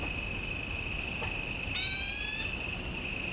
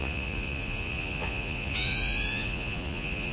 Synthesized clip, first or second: second